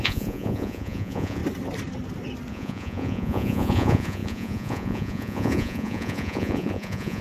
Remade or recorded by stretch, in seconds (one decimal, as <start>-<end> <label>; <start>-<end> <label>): 0.0-1.4 remade; 1.4-2.5 recorded; 2.5-7.2 remade